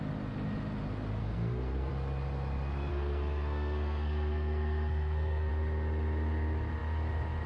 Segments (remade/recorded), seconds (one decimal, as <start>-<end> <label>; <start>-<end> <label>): 0.0-1.2 recorded; 1.2-1.9 remade; 1.9-2.9 recorded; 2.9-5.5 remade; 5.5-7.5 recorded